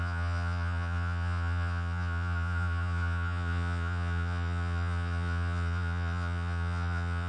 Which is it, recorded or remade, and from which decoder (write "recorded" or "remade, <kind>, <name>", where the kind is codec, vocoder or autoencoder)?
remade, vocoder, Vocos